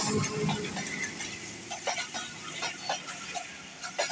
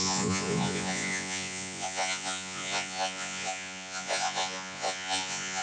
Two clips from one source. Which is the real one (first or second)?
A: first